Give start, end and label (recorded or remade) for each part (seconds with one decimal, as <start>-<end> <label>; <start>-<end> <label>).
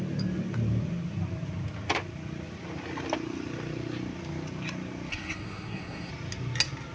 0.0-5.1 recorded; 5.1-6.1 remade; 6.1-6.9 recorded